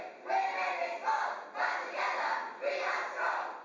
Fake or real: real